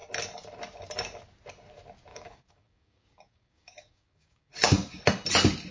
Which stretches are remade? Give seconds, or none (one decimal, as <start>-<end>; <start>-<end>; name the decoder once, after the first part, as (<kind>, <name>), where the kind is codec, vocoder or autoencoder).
2.1-5.0 (codec, DAC)